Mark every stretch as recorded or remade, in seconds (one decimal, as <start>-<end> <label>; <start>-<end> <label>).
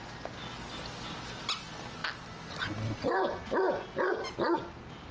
0.0-5.1 recorded